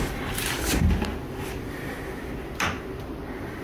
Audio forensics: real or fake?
real